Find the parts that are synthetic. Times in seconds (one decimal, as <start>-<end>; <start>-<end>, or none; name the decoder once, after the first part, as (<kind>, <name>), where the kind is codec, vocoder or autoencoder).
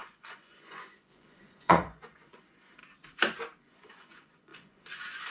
0.0-2.8 (vocoder, Vocos); 3.6-5.3